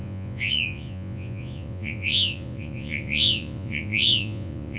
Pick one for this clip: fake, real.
fake